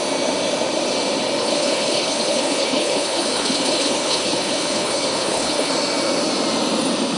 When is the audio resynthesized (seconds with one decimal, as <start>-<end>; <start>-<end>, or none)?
1.4-5.7